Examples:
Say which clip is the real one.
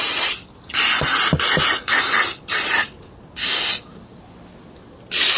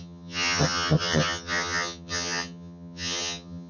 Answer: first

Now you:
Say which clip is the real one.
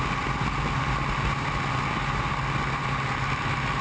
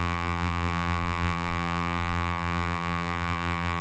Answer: first